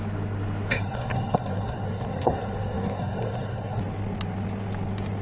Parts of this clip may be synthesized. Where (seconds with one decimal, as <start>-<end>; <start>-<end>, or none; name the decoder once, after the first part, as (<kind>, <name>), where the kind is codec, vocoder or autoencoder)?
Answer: 0.7-3.8 (codec, SNAC)